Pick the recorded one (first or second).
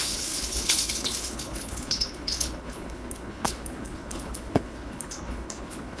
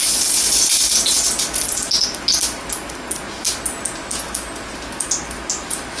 second